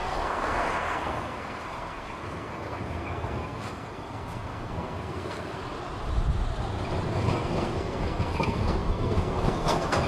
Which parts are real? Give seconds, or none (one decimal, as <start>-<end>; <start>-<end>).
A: 5.6-7.1